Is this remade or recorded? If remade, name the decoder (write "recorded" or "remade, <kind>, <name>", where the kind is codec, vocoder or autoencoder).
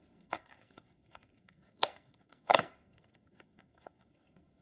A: remade, codec, SNAC